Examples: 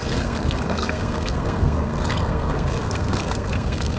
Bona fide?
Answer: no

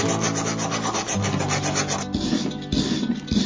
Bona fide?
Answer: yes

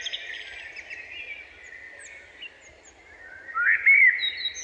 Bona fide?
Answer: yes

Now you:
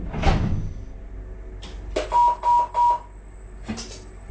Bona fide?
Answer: yes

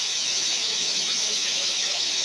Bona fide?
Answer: no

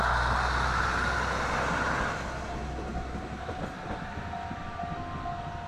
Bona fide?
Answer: yes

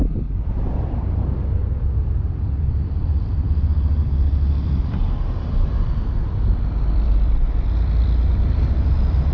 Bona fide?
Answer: no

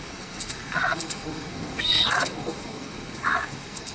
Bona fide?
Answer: no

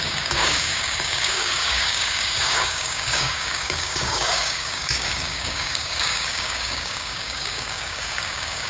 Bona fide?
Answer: no